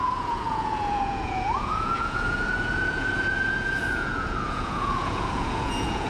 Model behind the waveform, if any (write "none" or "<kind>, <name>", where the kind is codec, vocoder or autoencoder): vocoder, Vocos